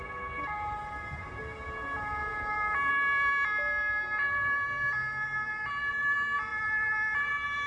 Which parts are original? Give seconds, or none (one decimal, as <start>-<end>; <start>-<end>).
0.0-2.2; 2.9-6.5; 7.3-7.7